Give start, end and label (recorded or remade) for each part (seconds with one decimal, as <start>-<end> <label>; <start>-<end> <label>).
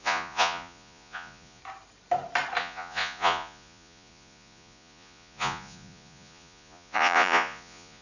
0.0-1.6 remade; 1.6-2.6 recorded; 2.6-8.0 remade